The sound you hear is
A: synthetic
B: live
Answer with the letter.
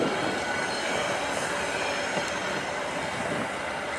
B